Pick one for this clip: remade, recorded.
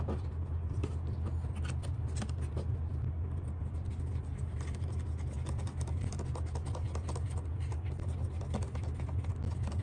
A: recorded